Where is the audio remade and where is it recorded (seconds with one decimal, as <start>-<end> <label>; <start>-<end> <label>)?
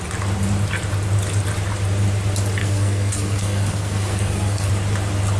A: 0.0-2.6 recorded; 2.6-4.7 remade; 4.7-5.4 recorded